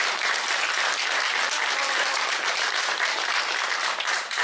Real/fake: fake